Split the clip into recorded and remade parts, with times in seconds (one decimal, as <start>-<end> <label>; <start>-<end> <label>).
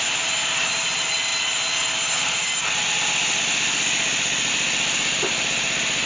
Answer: 0.0-6.1 recorded